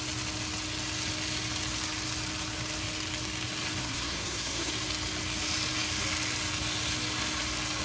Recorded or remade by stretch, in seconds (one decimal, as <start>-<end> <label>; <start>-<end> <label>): 0.0-3.8 recorded; 3.8-4.7 remade; 4.7-7.8 recorded